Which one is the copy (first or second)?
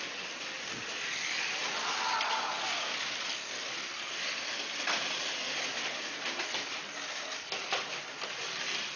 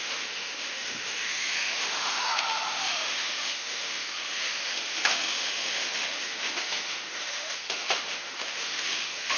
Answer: second